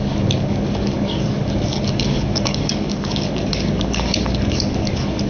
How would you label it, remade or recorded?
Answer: remade